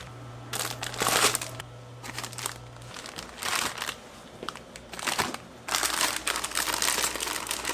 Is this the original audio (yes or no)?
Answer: yes